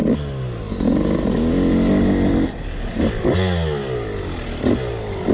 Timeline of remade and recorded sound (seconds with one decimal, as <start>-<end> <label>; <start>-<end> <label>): 0.0-5.3 recorded